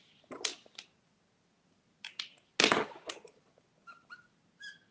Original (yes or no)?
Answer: yes